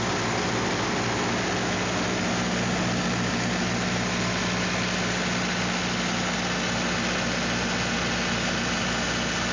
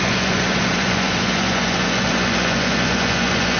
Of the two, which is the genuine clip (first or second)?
first